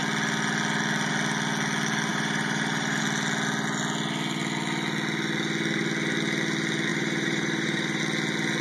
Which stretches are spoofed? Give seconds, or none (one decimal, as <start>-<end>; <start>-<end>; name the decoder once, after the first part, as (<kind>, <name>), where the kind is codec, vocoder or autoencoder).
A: 2.1-3.0 (vocoder, BigVGAN v2); 6.9-8.0